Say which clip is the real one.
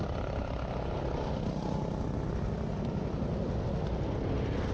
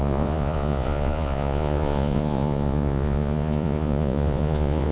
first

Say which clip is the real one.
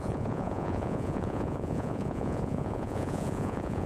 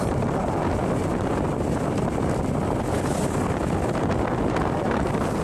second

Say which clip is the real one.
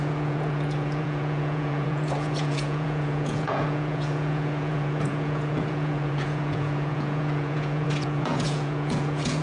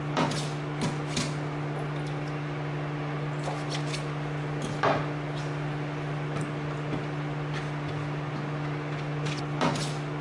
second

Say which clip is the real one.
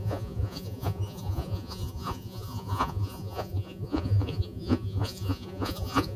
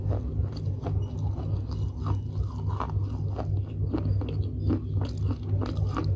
second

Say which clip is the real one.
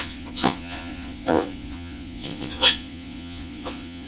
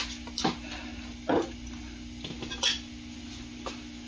second